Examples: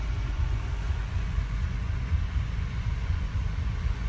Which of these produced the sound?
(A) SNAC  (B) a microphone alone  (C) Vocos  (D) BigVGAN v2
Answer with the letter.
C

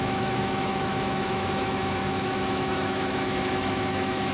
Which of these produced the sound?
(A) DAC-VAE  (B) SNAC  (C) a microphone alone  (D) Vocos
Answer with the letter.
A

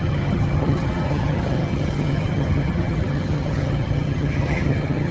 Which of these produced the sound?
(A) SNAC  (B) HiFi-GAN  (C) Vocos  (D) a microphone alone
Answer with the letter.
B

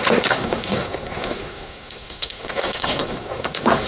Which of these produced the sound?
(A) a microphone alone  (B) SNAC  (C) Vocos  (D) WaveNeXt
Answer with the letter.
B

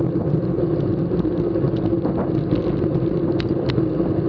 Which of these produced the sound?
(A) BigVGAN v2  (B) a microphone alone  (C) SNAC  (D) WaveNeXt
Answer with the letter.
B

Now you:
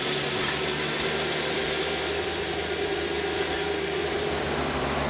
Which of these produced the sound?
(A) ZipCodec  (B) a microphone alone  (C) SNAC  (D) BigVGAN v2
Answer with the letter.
D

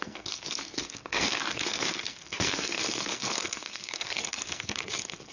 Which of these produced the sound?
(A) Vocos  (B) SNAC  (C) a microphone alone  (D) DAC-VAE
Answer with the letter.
B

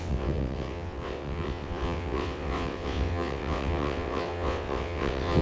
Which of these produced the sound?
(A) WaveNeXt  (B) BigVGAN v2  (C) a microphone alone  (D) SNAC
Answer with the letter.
A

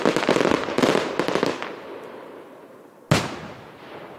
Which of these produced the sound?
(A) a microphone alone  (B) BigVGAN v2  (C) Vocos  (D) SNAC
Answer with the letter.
A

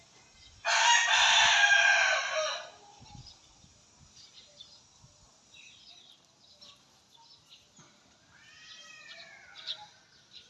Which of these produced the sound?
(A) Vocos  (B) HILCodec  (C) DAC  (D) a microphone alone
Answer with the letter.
D